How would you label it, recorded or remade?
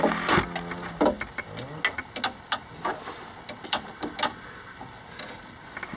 recorded